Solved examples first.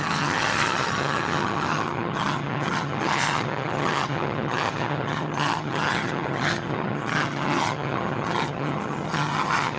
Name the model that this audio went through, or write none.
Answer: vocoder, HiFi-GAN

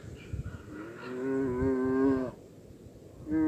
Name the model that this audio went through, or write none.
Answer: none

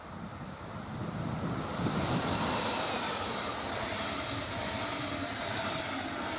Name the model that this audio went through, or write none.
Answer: vocoder, BigVGAN v2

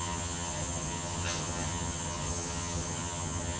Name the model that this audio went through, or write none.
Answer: vocoder, HiFi-GAN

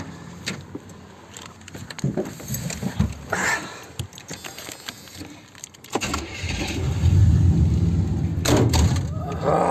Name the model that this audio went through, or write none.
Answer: none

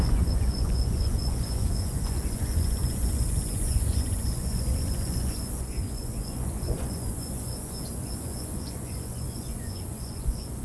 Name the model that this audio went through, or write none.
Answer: vocoder, Vocos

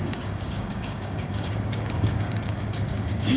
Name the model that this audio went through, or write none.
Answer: codec, DAC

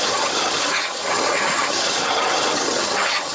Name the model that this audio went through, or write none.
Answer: vocoder, HiFi-GAN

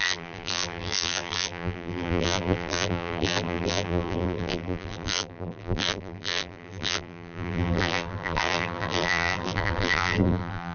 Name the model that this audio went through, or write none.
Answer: vocoder, BigVGAN v2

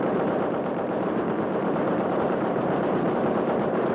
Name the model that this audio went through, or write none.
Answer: vocoder, BigVGAN v2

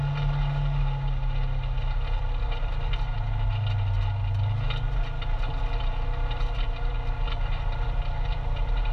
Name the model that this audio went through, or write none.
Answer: none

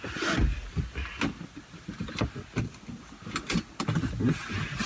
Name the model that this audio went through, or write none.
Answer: none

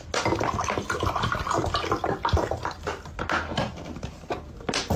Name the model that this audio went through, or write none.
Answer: none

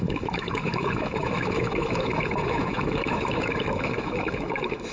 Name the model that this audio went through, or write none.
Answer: autoencoder, DAC-VAE